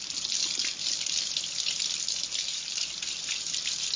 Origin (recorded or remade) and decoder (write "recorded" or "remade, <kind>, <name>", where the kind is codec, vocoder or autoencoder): recorded